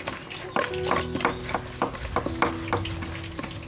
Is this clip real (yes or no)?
yes